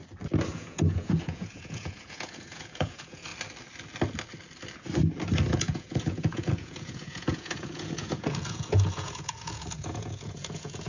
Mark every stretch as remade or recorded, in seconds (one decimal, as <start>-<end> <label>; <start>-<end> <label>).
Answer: 0.0-0.5 recorded; 0.5-3.3 remade; 3.3-5.5 recorded; 5.5-10.9 remade